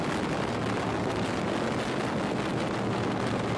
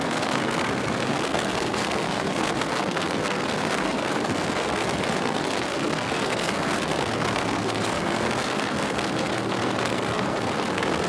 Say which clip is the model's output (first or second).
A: second